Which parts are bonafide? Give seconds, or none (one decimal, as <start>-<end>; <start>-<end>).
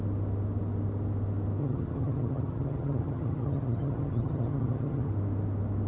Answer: 0.0-1.6; 5.1-5.9